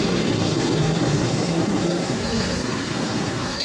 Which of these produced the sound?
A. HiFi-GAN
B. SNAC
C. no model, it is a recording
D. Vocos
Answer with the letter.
B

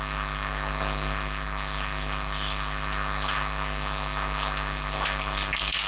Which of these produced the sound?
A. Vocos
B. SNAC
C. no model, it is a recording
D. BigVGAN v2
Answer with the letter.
C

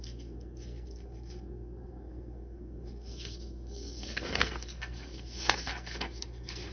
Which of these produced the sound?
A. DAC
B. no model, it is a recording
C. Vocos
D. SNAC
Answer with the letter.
D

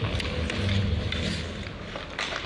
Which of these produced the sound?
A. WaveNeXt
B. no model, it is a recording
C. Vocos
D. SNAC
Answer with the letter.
B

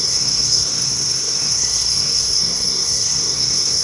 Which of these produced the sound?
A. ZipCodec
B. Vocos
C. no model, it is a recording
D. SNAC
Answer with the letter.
D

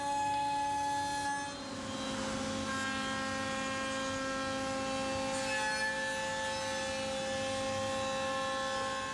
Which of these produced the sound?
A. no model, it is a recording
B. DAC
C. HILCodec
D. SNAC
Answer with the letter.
A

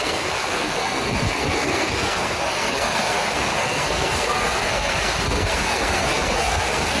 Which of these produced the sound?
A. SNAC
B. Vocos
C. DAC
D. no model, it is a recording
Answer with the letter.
A